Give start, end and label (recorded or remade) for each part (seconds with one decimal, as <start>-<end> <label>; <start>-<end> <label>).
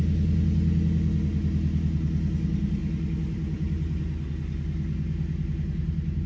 0.0-2.8 recorded; 2.8-4.3 remade; 4.3-6.3 recorded